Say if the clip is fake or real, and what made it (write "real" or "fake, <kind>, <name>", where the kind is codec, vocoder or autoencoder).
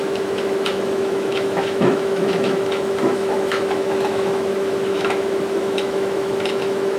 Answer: fake, autoencoder, DAC-VAE